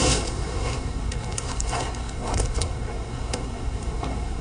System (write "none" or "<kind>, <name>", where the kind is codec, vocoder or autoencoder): codec, SNAC